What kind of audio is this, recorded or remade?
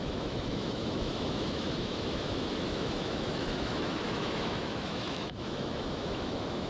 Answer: remade